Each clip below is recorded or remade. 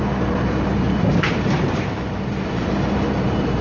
remade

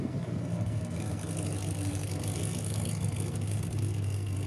remade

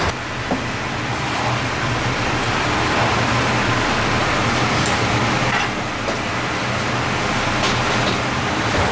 recorded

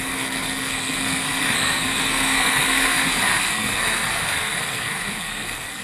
remade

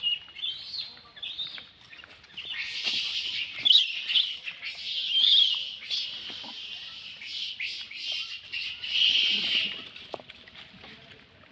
recorded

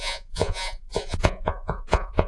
remade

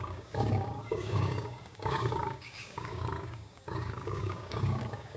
remade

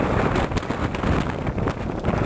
recorded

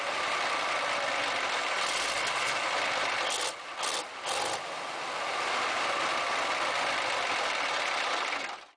recorded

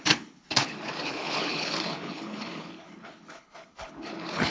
remade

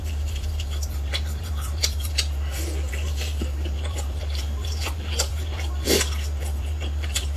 remade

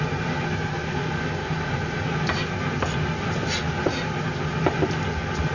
recorded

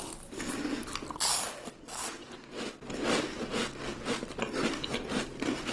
recorded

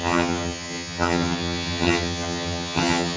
remade